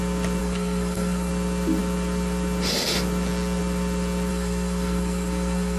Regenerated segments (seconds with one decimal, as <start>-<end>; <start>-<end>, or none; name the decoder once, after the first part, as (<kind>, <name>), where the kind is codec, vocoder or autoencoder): 0.4-1.3 (codec, SNAC); 4.3-5.8